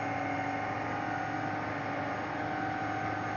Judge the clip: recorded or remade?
recorded